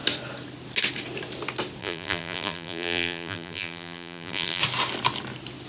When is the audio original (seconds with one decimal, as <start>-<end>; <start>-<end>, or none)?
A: 0.0-1.8; 4.6-5.7